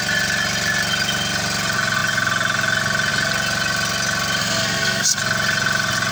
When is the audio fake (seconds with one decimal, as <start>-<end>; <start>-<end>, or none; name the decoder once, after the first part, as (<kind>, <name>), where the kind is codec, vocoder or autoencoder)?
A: 4.4-5.2 (codec, SNAC)